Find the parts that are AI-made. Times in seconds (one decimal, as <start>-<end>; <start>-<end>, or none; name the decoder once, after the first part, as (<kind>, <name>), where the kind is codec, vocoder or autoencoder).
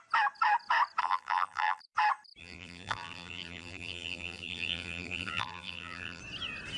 1.0-1.8 (vocoder, BigVGAN v2); 2.4-6.2